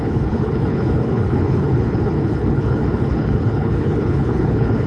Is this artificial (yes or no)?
yes